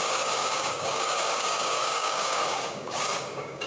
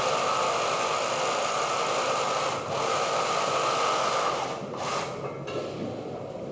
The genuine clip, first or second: second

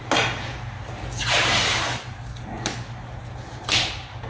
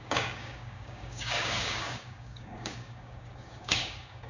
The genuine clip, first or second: first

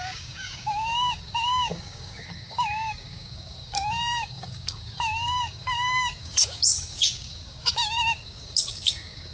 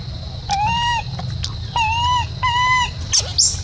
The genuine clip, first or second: second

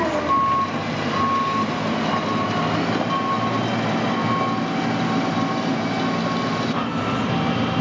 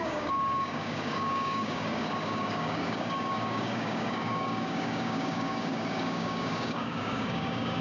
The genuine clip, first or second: first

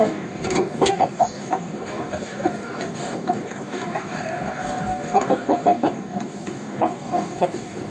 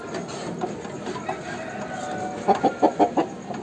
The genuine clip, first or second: second